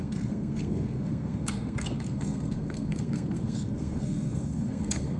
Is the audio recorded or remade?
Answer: remade